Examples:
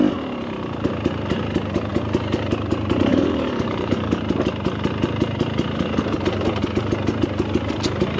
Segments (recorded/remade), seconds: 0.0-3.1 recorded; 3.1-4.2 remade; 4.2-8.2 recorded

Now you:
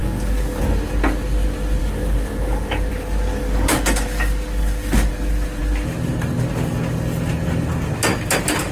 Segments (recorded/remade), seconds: 0.0-0.6 remade; 0.6-1.8 recorded; 1.8-2.9 remade; 2.9-3.3 recorded; 3.3-5.1 remade; 5.1-8.7 recorded

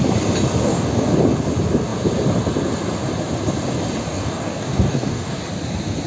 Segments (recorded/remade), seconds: 0.0-0.6 recorded; 0.6-1.2 remade; 1.2-4.1 recorded; 4.1-5.4 remade; 5.4-6.1 recorded

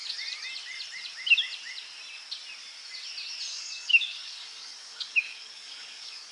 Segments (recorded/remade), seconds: 0.0-3.5 recorded; 3.5-6.3 remade